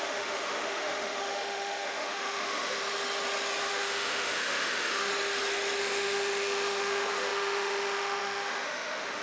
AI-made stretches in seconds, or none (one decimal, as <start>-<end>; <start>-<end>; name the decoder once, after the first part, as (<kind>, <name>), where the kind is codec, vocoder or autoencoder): 0.0-2.8 (autoencoder, DAC-VAE); 3.7-5.1; 5.8-9.2